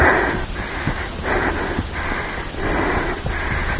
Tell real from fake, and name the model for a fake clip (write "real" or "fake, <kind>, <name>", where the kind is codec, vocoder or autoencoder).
real